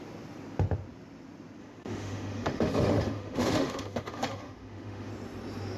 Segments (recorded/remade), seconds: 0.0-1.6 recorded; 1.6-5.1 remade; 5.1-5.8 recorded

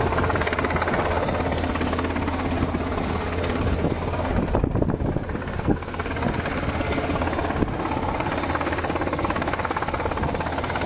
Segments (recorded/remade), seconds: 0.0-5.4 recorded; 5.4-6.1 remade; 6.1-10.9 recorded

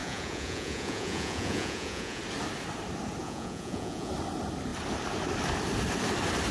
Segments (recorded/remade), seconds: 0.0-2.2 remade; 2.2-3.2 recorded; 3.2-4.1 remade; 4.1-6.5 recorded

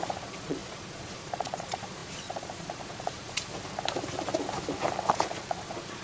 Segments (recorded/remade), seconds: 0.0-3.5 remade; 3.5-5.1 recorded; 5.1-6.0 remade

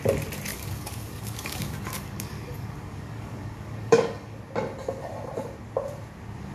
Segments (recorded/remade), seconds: 0.0-0.5 recorded; 0.5-4.4 remade; 4.4-6.5 recorded